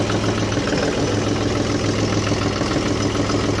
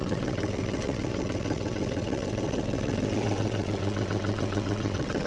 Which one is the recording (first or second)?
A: first